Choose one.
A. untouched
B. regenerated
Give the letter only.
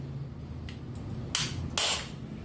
A